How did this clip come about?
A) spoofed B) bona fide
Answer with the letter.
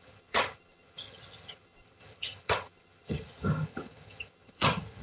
A